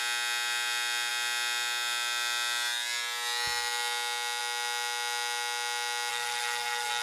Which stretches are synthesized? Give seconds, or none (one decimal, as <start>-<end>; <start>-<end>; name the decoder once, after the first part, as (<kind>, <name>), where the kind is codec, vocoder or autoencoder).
6.1-7.0 (codec, SNAC)